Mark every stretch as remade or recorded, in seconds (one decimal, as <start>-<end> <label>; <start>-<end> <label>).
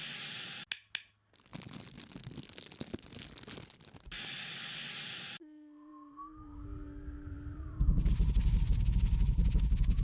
0.0-5.9 recorded; 5.9-8.1 remade; 8.1-10.0 recorded